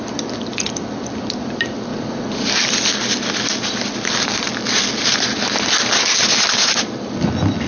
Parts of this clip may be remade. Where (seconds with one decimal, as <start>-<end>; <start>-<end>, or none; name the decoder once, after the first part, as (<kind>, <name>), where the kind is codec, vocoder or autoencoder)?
1.9-2.5 (vocoder, Vocos)